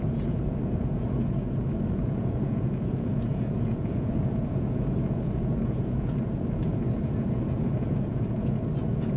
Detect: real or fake fake